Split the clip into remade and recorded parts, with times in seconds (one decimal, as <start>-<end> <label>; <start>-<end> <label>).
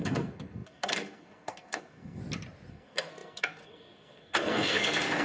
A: 0.0-2.2 remade; 2.2-2.7 recorded; 2.7-5.2 remade